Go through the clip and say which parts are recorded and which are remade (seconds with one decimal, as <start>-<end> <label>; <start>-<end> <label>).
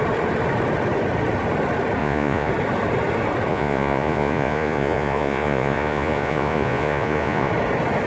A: 0.0-2.0 recorded; 2.0-2.5 remade; 2.5-3.5 recorded; 3.5-7.5 remade; 7.5-8.1 recorded